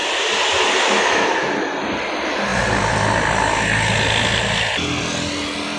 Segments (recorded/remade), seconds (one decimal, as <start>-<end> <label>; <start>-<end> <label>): 0.0-5.8 recorded